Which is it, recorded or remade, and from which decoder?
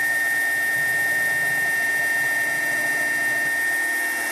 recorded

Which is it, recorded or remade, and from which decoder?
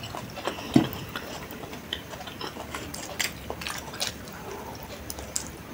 recorded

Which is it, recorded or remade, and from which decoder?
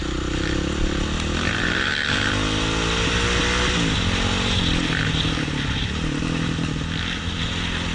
recorded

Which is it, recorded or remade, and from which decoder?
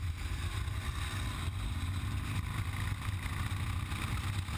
recorded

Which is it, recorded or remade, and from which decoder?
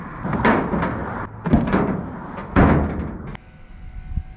recorded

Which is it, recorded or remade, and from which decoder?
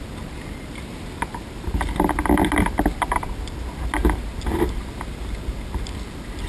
recorded